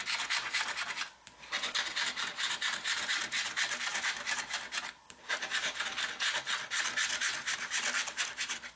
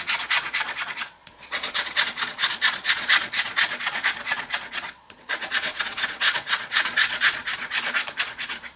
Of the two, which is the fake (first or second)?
second